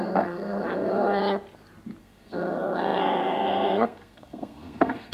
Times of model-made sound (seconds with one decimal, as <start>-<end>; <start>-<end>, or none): 0.0-1.2; 2.0-5.1